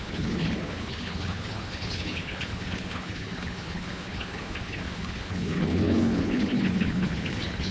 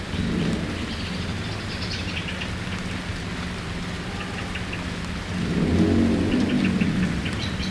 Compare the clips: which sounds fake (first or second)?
first